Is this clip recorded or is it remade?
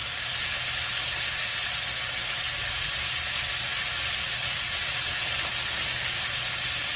recorded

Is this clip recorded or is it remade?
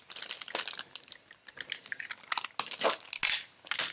recorded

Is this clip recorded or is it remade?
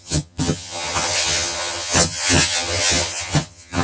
remade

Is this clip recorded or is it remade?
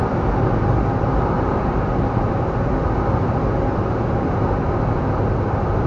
recorded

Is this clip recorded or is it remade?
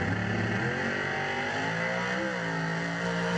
recorded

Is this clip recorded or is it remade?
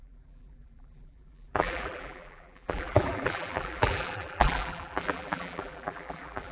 remade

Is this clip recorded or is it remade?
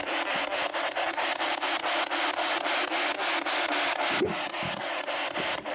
recorded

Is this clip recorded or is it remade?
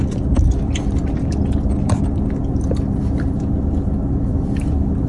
remade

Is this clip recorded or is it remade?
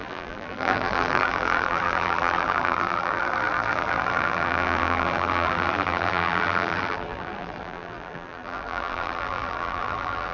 remade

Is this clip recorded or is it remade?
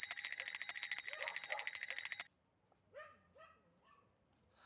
recorded